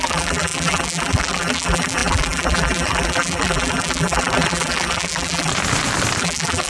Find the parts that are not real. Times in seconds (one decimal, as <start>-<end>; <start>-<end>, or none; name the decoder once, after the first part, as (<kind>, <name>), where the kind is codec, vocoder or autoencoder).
0.0-5.5 (vocoder, BigVGAN v2); 6.2-6.7